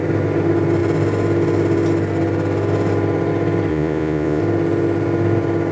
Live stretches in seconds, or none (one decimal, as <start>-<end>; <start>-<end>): 0.0-3.7; 4.4-5.7